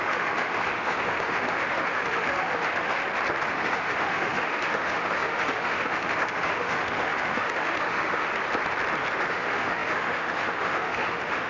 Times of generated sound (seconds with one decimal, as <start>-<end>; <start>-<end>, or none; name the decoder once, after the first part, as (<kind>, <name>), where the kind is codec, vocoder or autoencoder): 0.0-3.0 (autoencoder, DAC-VAE); 3.5-8.3; 9.3-11.5